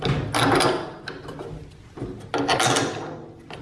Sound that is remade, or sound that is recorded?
recorded